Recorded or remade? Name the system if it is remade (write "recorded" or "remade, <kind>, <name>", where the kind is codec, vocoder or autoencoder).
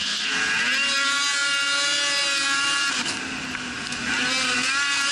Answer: recorded